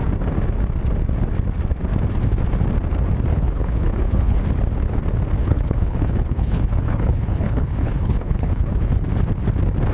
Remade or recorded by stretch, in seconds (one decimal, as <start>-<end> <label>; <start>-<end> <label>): 0.0-3.3 recorded; 3.3-4.4 remade; 4.4-5.4 recorded; 5.4-8.9 remade; 8.9-9.9 recorded